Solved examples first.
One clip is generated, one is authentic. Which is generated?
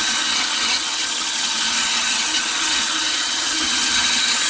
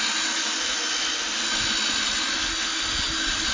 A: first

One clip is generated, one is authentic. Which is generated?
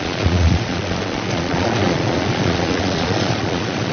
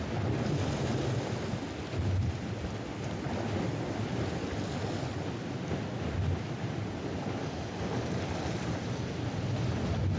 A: first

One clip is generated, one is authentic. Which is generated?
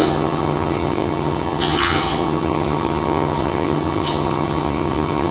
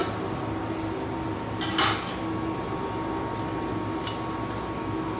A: first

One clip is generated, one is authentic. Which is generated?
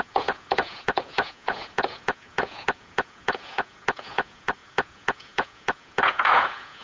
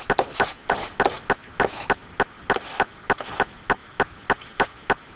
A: first